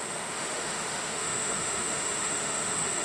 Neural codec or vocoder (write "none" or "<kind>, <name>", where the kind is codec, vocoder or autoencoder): autoencoder, DAC-VAE